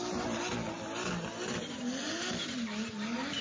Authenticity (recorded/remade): recorded